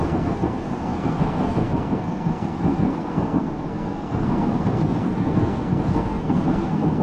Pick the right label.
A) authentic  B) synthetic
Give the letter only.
B